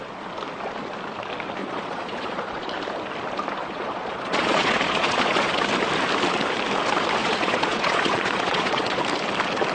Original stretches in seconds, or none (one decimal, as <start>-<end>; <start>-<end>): 0.0-1.6; 2.7-3.6; 5.6-7.2; 9.0-9.7